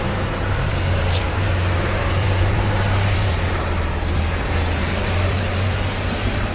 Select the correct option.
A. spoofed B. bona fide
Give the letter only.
A